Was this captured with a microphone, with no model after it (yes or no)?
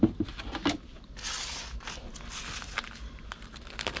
yes